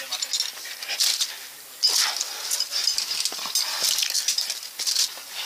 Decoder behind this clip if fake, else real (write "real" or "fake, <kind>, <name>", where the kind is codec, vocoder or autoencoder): real